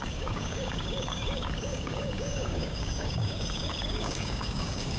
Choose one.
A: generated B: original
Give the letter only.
A